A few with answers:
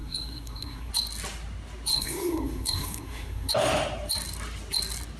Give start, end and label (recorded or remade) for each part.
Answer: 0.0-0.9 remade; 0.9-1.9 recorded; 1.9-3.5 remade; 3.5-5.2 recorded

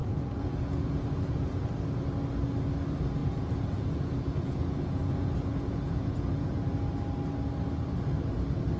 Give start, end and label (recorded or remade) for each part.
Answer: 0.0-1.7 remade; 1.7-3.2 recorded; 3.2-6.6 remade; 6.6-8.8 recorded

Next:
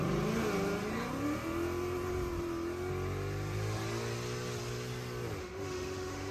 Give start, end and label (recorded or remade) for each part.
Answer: 0.0-5.4 recorded; 5.4-6.3 remade

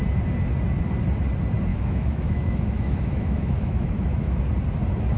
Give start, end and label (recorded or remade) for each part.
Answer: 0.0-1.7 recorded; 1.7-4.4 remade; 4.4-5.2 recorded

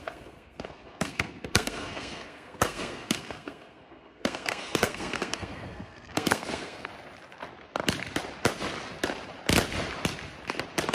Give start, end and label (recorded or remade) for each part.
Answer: 0.0-6.9 remade; 6.9-10.9 recorded

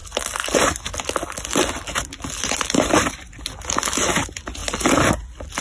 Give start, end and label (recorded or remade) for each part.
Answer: 0.0-5.6 recorded

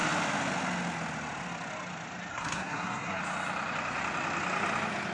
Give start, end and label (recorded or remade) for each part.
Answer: 0.0-2.3 recorded; 2.3-3.2 remade; 3.2-5.1 recorded